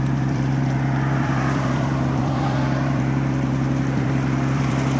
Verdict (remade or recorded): remade